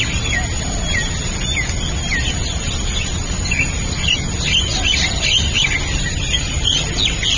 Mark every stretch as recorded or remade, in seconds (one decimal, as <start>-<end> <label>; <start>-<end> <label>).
0.0-7.4 recorded